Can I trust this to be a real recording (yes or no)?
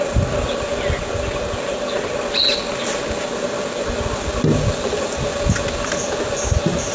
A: yes